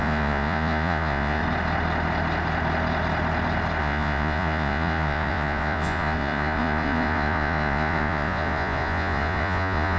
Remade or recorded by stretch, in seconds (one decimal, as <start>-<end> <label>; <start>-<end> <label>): 0.0-1.4 remade; 1.4-3.8 recorded; 3.8-10.0 remade